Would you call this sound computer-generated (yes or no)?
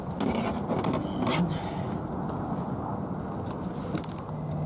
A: no